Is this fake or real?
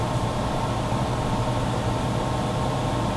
fake